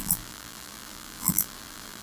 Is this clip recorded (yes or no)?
no